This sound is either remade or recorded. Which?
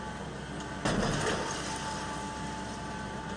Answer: recorded